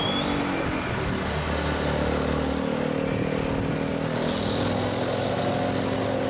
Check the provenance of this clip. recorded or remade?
recorded